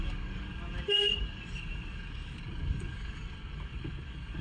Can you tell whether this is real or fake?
fake